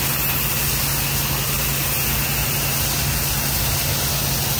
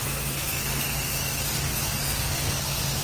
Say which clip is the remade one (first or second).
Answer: second